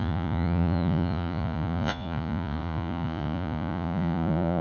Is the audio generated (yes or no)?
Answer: yes